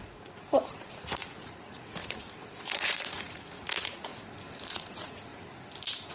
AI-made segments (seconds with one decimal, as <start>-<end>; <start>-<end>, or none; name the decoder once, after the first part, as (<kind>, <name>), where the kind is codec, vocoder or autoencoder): 0.0-4.1 (vocoder, Vocos); 4.7-5.3